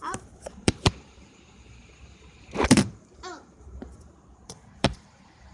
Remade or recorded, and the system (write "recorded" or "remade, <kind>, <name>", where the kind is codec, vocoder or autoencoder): remade, vocoder, BigVGAN v2